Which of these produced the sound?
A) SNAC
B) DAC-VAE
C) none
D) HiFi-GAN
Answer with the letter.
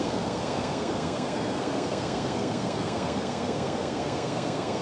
A